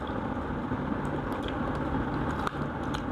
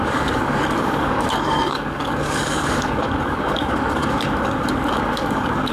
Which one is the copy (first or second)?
second